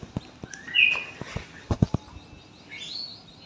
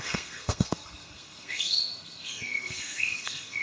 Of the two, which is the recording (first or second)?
first